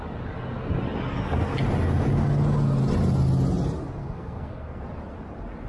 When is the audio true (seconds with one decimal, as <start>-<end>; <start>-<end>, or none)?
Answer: 0.0-4.0; 4.8-5.7